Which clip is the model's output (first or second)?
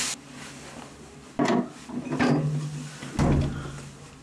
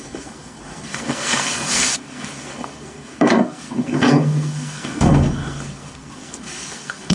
second